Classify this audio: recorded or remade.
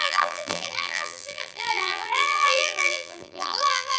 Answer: remade